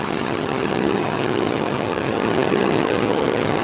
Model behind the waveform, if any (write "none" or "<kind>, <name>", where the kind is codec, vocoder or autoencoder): vocoder, HiFi-GAN